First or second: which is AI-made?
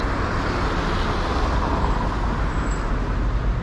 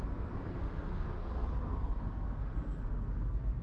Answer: second